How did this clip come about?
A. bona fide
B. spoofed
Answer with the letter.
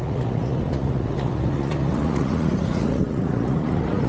B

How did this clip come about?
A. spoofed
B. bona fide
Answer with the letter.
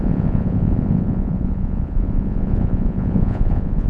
A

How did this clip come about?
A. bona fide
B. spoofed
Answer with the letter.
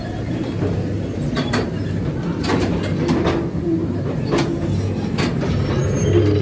A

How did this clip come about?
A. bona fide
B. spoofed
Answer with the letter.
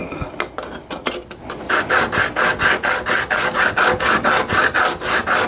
A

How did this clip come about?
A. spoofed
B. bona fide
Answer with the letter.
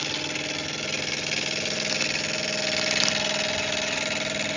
B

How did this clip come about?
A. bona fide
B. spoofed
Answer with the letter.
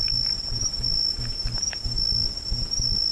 A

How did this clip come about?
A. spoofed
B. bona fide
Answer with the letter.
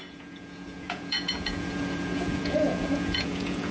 A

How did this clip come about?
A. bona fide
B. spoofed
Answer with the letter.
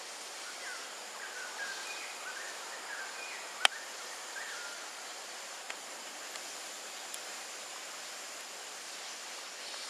A